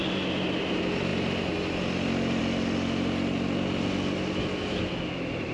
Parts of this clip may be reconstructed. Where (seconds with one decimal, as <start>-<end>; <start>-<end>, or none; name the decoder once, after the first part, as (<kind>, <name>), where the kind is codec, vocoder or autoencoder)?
none